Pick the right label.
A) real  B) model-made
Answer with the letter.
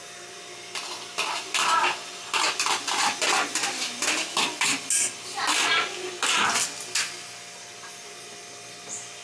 A